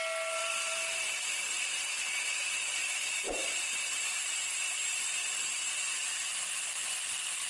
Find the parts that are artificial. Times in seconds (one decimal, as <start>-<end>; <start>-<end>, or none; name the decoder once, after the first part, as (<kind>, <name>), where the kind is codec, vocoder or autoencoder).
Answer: 0.4-4.9 (vocoder, BigVGAN v2)